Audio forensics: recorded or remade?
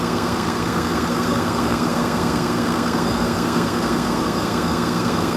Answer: remade